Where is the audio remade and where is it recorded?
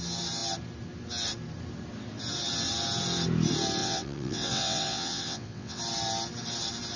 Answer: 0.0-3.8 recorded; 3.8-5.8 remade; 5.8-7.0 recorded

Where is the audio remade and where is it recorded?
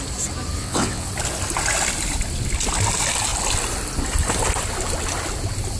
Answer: 0.0-0.6 recorded; 0.6-1.1 remade; 1.1-5.8 recorded